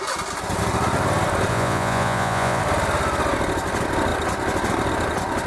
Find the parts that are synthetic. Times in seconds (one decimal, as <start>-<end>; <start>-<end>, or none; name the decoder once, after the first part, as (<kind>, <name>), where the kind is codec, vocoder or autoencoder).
1.5-2.6 (vocoder, Vocos)